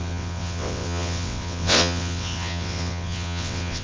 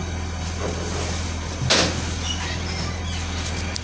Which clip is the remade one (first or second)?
first